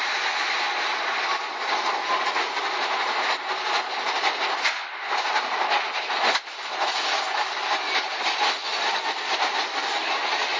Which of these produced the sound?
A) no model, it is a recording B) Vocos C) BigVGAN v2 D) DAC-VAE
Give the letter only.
A